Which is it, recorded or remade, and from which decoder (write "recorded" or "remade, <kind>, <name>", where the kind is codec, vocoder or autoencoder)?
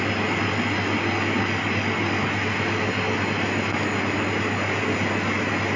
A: recorded